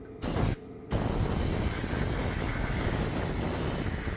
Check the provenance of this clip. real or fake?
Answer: real